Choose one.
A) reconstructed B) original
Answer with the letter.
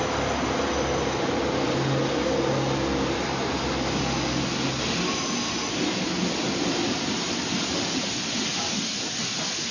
B